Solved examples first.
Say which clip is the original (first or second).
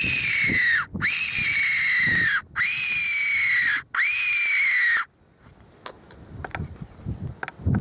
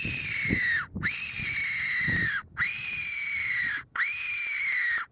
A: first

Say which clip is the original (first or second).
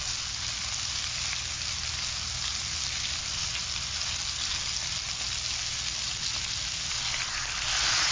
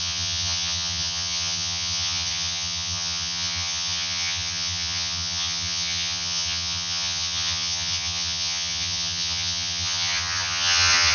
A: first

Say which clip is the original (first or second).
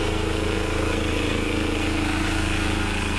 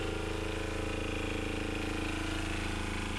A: second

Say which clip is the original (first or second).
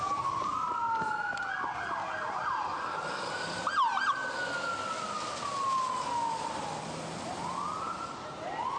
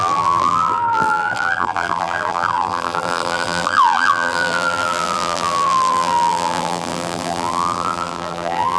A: first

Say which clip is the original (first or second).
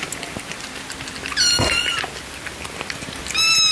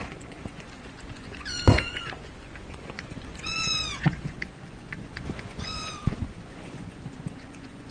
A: first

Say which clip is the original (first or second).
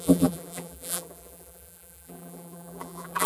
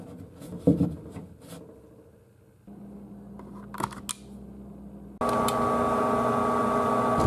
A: second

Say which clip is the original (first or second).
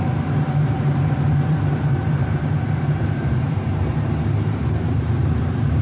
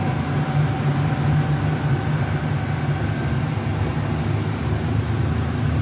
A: second